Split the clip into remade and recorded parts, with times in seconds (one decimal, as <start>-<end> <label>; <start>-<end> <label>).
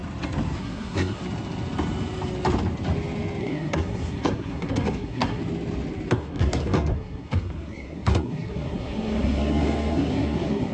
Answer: 0.0-0.6 recorded; 0.6-1.2 remade; 1.2-3.4 recorded; 3.4-5.4 remade; 5.4-6.1 recorded; 6.1-10.7 remade